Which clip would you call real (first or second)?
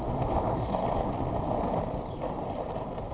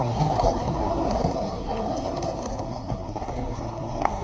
first